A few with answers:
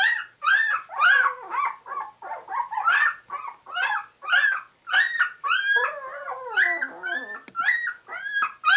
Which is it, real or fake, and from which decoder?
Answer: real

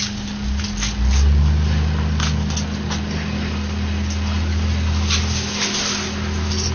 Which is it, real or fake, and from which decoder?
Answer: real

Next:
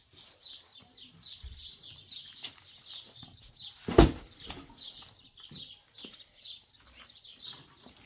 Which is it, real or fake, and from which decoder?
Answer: real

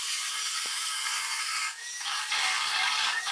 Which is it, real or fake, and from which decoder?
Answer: fake, codec, DAC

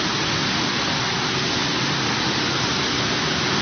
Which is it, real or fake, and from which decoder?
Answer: real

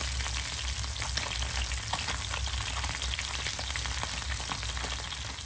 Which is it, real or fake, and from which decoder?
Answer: real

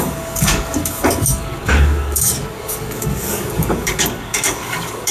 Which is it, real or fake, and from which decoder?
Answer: fake, codec, DAC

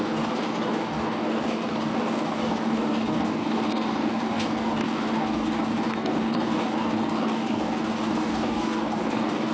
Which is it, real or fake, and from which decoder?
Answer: fake, codec, DAC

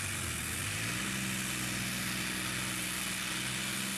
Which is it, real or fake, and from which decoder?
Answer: real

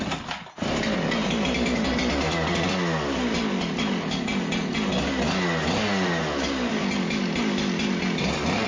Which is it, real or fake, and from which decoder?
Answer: real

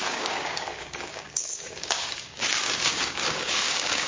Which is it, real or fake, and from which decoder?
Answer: fake, codec, DAC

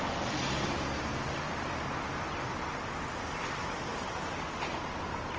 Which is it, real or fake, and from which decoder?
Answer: real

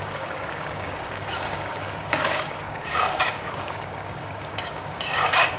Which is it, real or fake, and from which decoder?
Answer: fake, codec, DAC